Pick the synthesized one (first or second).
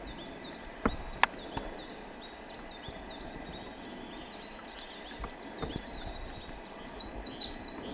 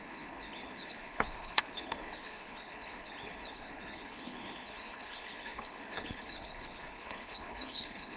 second